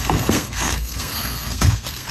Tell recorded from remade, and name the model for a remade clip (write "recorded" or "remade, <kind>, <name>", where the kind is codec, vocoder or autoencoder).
remade, codec, SNAC